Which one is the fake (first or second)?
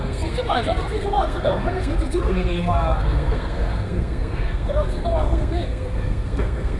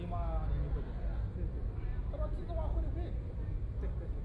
first